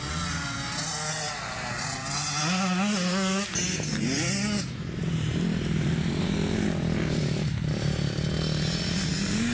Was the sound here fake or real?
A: real